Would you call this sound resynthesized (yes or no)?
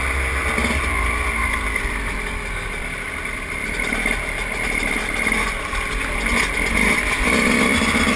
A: no